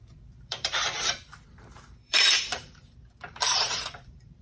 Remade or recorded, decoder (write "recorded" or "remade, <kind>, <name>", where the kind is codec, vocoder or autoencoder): remade, vocoder, BigVGAN v2